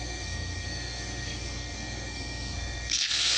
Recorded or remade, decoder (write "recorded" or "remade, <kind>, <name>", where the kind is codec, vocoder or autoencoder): remade, codec, SNAC